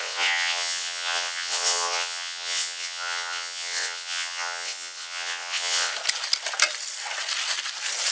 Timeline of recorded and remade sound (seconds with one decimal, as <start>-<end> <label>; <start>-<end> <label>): 0.0-5.9 remade; 5.9-8.1 recorded